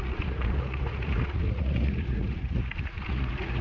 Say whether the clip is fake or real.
fake